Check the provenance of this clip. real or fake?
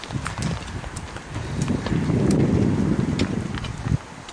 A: real